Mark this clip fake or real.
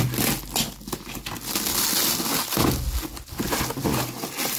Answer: real